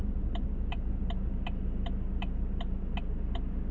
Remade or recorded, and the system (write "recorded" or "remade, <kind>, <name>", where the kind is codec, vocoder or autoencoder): recorded